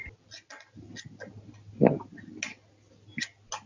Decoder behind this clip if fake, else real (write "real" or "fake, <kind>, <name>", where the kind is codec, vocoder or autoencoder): real